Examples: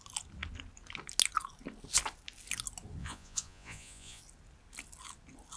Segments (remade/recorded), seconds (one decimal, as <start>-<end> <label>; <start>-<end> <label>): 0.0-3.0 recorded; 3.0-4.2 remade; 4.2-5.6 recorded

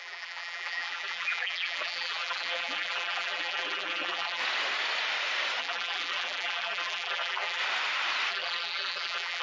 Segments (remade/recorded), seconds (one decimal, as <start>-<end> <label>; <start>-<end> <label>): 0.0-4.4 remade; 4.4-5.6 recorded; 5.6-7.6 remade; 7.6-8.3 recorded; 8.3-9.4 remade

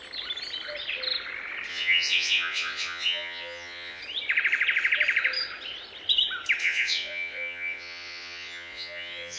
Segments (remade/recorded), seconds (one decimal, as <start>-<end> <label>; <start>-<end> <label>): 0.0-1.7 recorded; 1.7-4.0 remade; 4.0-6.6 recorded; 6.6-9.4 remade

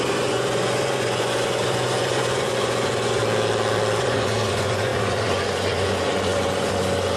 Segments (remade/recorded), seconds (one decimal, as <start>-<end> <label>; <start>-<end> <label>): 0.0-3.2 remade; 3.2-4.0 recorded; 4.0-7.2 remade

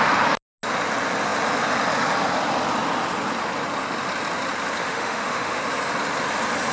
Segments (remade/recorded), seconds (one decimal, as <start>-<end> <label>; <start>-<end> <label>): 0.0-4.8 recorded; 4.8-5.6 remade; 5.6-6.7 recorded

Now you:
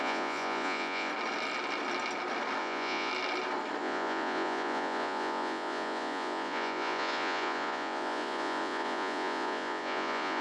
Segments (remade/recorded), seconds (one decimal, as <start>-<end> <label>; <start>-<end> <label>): 0.0-1.1 remade; 1.1-2.6 recorded; 2.6-3.1 remade; 3.1-3.8 recorded; 3.8-10.4 remade